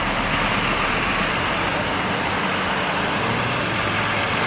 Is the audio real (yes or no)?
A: yes